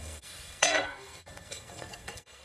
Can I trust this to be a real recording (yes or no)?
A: no